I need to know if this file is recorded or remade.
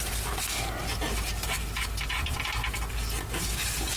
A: recorded